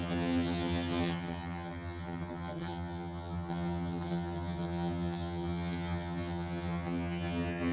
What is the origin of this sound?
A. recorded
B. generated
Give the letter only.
B